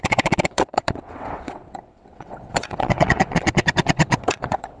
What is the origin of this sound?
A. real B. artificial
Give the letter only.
B